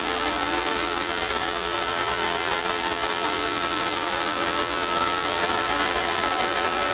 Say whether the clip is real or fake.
fake